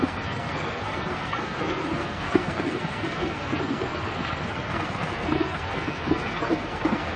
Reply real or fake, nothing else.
fake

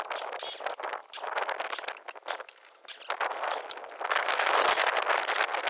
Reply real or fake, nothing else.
real